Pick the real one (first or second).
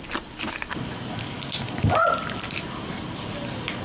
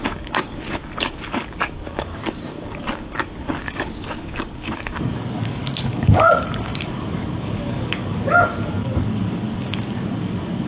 first